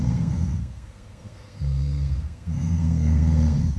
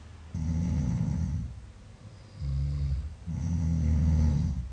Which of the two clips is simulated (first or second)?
first